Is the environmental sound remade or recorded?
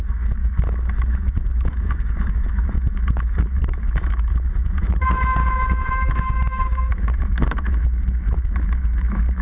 remade